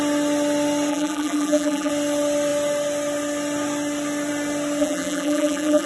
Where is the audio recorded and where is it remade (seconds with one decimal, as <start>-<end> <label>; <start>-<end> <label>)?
0.0-0.9 recorded; 0.9-1.9 remade; 1.9-4.8 recorded; 4.8-5.9 remade